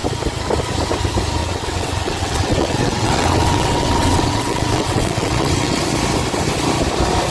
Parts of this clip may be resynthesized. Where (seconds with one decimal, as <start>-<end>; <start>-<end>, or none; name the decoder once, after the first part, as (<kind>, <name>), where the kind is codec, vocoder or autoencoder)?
1.4-5.8 (vocoder, WaveNeXt)